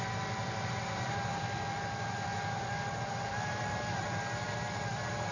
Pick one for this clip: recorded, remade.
recorded